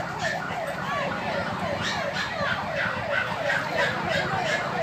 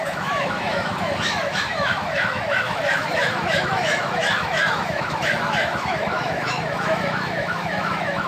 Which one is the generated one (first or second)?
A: second